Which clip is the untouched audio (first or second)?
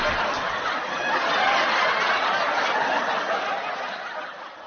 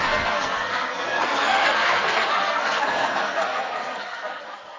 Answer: first